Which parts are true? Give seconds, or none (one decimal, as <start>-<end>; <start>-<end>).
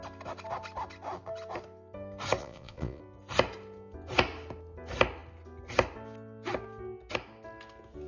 0.0-2.4; 3.0-8.1